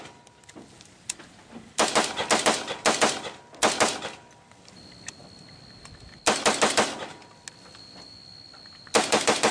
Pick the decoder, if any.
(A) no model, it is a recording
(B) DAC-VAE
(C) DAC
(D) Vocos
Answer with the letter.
A